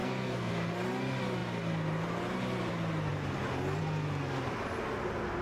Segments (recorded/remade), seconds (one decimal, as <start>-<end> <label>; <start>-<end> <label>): 0.0-0.5 remade; 0.5-5.4 recorded